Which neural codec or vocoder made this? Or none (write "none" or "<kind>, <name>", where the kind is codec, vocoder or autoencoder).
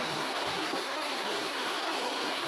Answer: codec, SNAC